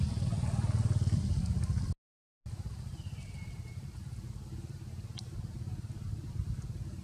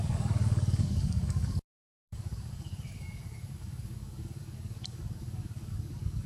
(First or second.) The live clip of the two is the first